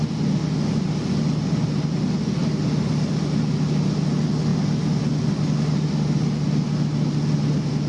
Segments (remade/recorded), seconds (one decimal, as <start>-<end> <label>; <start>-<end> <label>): 0.0-7.9 recorded